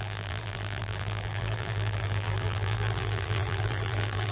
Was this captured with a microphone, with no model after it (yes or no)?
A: no